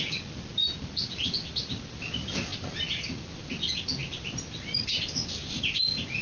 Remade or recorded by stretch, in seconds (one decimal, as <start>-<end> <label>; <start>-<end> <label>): 0.0-0.5 recorded; 0.5-2.0 remade; 2.0-2.5 recorded; 2.5-3.5 remade; 3.5-4.0 recorded; 4.0-5.6 remade; 5.6-6.2 recorded